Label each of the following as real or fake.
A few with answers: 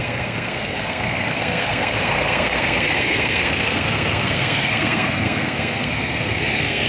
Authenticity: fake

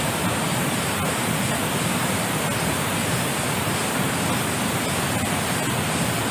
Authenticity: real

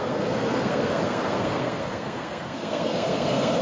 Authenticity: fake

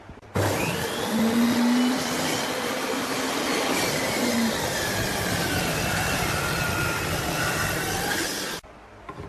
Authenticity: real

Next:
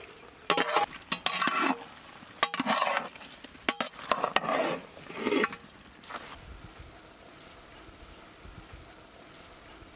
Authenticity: real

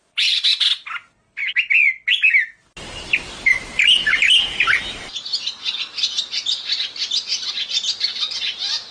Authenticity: real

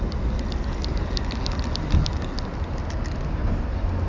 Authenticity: real